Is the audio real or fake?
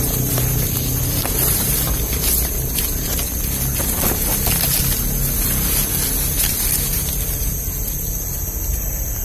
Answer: real